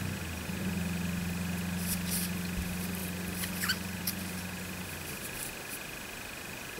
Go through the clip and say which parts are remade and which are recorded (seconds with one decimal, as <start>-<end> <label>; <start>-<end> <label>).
0.0-6.8 recorded